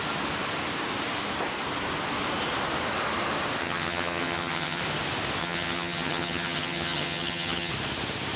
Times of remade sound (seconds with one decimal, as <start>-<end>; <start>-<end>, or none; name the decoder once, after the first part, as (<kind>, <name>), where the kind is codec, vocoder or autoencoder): 3.6-4.8 (vocoder, HiFi-GAN); 5.4-7.7